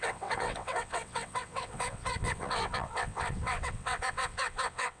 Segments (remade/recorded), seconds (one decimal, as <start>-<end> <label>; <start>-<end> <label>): 0.0-5.0 remade